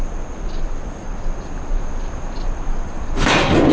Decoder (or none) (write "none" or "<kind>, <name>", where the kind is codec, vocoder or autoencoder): none